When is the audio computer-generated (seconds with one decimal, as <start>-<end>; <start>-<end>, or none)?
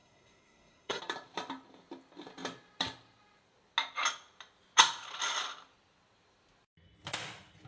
0.0-1.0